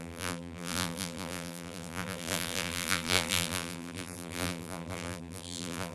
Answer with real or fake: fake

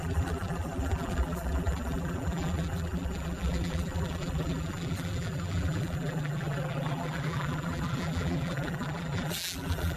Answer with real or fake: fake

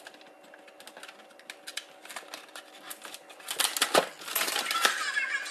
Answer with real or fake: real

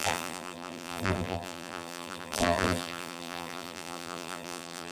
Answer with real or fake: fake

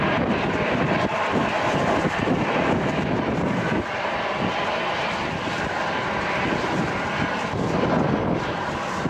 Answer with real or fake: real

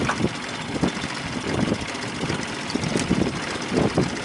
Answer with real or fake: real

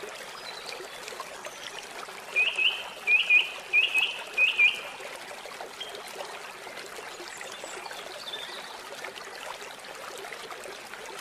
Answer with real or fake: real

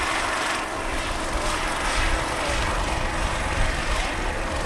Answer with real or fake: real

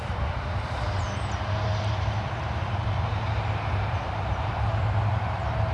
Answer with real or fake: fake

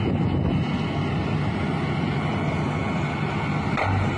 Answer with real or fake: real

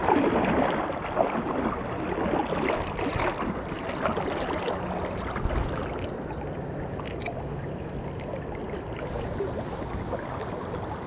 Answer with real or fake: real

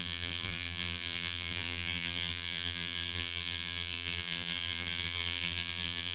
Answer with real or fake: fake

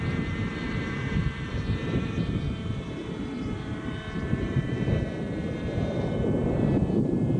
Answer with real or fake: fake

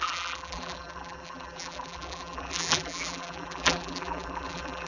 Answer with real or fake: fake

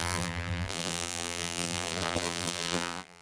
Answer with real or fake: fake